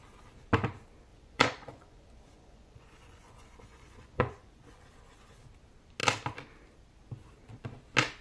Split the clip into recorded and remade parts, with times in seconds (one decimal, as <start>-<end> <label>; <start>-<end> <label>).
0.0-1.1 recorded; 1.1-4.8 remade; 4.8-8.2 recorded